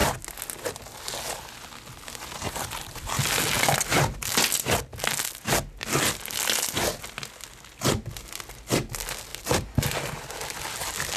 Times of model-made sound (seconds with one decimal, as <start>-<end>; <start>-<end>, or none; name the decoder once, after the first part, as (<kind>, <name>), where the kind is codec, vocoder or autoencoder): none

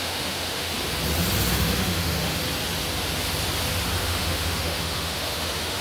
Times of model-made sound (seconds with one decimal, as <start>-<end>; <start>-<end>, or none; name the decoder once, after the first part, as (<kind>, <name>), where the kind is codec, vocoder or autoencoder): 0.0-0.7 (autoencoder, DAC-VAE); 1.5-2.4; 4.0-5.8

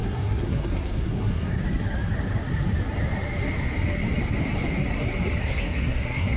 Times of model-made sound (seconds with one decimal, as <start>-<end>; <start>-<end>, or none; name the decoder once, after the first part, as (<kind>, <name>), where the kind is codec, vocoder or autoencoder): 0.0-1.6 (codec, SNAC); 5.4-6.4

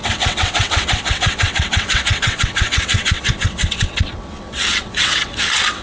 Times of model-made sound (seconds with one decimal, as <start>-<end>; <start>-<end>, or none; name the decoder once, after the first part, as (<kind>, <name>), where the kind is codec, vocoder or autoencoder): 0.0-5.8 (vocoder, WaveNeXt)

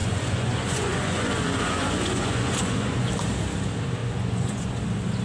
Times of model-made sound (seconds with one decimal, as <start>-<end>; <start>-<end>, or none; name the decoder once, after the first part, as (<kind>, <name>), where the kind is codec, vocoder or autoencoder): 0.0-3.1 (vocoder, Vocos); 4.0-4.8

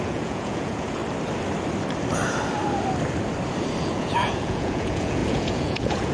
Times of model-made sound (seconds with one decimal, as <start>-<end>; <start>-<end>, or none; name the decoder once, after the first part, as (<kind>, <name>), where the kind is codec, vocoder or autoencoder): 0.0-1.0 (vocoder, Vocos); 3.8-6.1